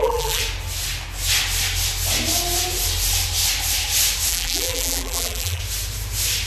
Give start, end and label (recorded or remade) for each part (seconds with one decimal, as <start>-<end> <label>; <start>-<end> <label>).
0.0-0.4 remade; 0.4-4.3 recorded; 4.3-5.6 remade; 5.6-6.5 recorded